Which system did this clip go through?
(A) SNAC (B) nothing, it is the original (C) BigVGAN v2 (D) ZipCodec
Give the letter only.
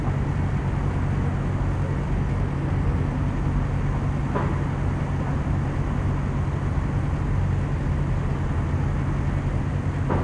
B